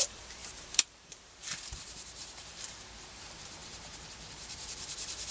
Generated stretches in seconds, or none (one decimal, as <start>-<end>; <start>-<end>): 0.0-5.3